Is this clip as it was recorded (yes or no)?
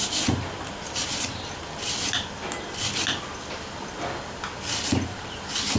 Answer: yes